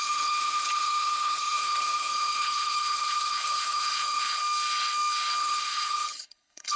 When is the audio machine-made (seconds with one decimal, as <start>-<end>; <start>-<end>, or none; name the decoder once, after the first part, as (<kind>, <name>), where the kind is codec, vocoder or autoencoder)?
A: 0.0-4.4 (codec, HILCodec); 5.4-6.8